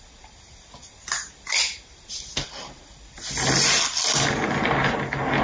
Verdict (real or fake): real